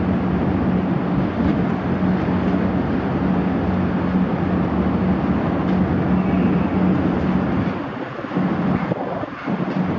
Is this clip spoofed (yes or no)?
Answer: no